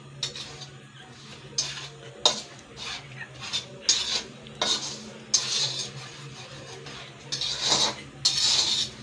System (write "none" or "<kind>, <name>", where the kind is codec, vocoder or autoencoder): none